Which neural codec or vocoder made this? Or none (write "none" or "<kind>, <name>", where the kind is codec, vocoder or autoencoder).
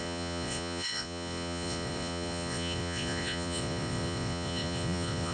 vocoder, Vocos